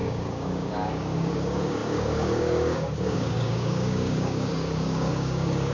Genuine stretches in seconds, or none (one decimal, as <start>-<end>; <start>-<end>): none